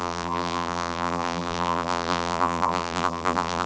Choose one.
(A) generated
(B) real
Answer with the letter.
A